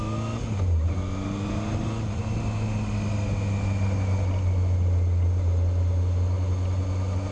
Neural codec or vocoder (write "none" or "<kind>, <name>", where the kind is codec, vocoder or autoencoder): none